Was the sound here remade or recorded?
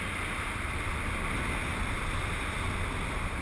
recorded